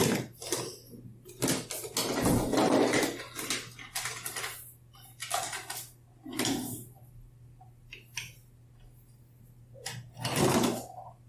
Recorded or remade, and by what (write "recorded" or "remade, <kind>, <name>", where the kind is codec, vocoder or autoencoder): recorded